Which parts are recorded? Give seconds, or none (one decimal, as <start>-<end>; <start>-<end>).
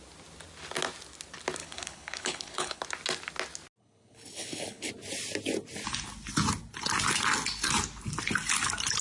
0.0-1.6; 2.8-3.8; 4.9-9.0